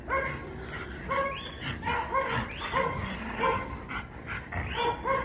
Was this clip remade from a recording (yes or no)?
no